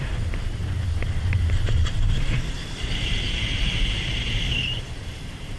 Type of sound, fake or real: fake